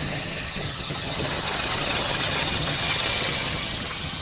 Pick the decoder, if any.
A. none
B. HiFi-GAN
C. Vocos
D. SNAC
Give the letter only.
B